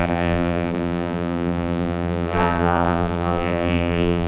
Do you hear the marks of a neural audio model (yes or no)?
yes